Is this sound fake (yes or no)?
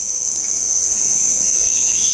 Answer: yes